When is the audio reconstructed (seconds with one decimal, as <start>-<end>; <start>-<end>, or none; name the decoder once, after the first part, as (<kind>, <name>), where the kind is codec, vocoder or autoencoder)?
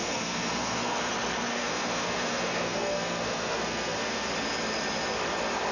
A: 0.0-1.1 (codec, SNAC); 1.5-4.3